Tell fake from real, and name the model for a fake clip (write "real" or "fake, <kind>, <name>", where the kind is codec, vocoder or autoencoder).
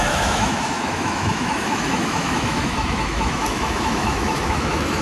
fake, autoencoder, DAC-VAE